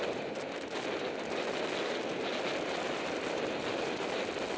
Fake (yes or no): no